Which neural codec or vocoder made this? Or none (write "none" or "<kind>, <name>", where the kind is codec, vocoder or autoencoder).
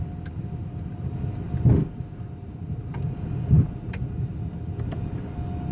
none